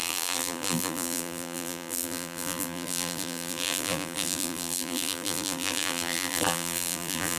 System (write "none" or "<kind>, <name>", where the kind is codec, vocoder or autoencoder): vocoder, BigVGAN v2